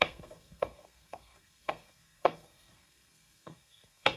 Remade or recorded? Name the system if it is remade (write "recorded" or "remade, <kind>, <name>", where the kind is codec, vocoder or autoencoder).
remade, codec, SNAC